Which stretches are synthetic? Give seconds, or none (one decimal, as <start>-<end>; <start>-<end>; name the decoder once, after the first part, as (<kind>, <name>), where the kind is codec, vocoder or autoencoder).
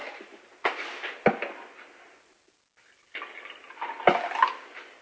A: none